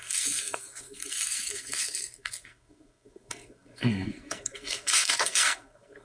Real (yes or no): no